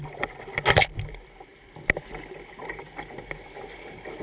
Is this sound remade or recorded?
recorded